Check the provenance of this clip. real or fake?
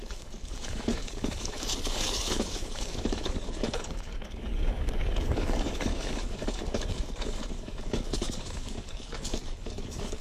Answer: fake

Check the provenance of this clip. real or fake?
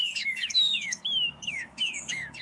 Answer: fake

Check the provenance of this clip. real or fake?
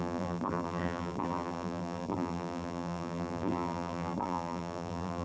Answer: fake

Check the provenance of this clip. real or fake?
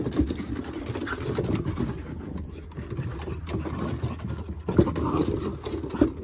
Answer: real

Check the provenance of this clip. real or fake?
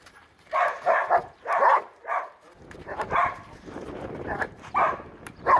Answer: fake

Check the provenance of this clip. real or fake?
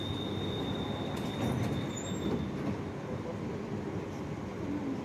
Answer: real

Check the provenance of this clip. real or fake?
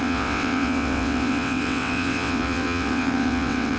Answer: fake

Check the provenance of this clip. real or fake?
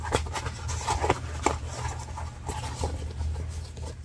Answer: real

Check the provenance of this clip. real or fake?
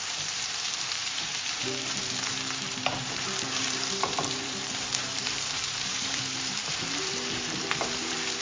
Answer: fake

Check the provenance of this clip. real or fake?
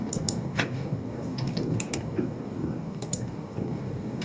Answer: fake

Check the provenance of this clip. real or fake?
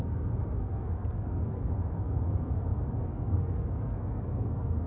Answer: fake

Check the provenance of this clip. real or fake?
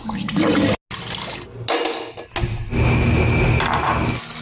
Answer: real